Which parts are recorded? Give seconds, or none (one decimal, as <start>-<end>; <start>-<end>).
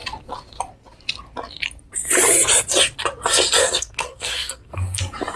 0.0-3.6; 5.0-5.4